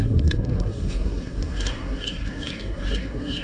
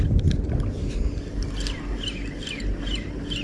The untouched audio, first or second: second